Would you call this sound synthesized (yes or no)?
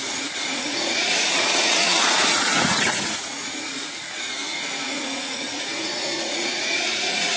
yes